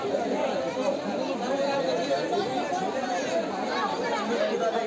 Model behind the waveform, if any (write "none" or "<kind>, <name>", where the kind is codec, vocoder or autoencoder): none